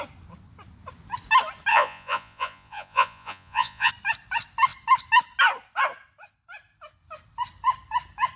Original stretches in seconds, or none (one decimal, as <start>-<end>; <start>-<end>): 0.0-1.7; 3.9-8.4